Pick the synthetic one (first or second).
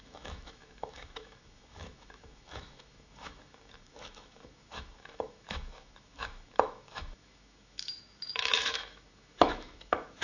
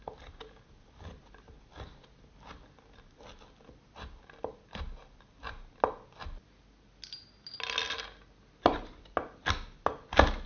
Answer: first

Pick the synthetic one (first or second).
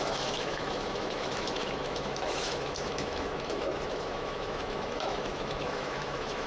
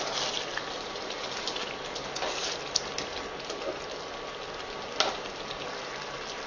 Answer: first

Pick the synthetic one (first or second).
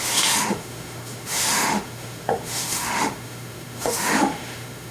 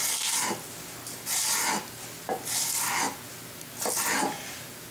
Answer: first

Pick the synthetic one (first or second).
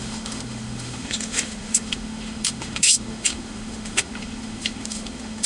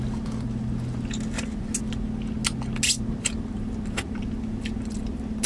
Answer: first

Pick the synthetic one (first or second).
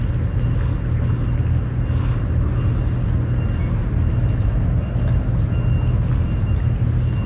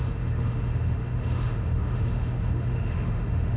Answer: second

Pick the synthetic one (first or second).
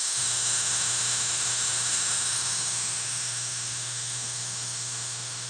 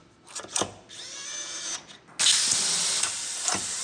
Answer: first